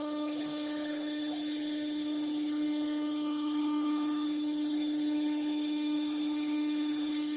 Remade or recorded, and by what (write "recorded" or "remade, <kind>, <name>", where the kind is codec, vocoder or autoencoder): remade, codec, HILCodec